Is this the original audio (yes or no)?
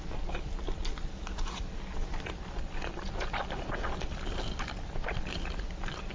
yes